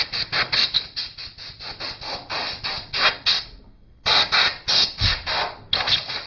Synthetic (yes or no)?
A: no